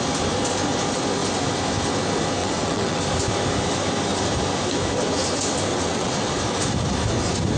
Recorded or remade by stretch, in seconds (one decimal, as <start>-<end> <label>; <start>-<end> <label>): 0.0-2.4 recorded; 2.4-3.0 remade; 3.0-5.7 recorded; 5.7-6.3 remade; 6.3-7.6 recorded